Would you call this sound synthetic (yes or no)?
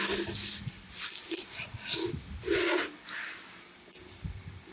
no